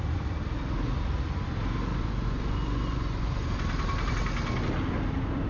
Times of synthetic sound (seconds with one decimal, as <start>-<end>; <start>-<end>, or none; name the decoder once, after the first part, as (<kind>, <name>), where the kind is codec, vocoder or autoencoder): 1.9-3.5 (vocoder, Vocos)